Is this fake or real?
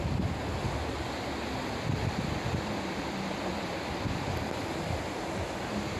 real